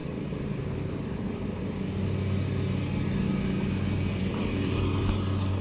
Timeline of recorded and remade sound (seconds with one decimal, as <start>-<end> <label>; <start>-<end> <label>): 0.0-1.6 remade; 1.6-4.1 recorded; 4.1-5.1 remade; 5.1-5.6 recorded

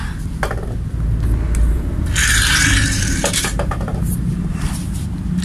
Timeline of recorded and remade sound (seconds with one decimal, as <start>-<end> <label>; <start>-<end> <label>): 0.0-2.2 recorded; 2.2-5.4 remade

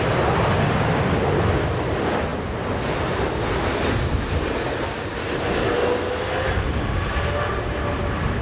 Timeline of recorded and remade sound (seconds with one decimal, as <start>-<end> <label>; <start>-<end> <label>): 0.0-8.4 recorded

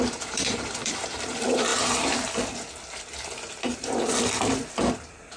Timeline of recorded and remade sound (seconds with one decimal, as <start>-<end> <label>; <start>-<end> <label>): 0.0-1.7 remade; 1.7-4.9 recorded; 4.9-5.4 remade